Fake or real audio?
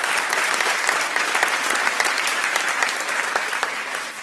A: fake